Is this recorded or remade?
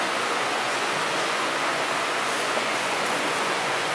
remade